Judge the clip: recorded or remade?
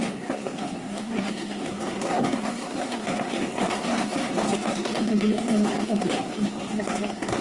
remade